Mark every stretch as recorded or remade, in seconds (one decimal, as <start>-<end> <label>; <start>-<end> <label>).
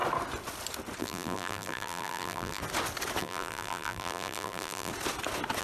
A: 0.0-1.0 recorded; 1.0-2.6 remade; 2.6-3.2 recorded; 3.2-4.9 remade; 4.9-5.6 recorded